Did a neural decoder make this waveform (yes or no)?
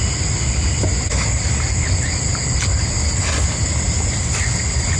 no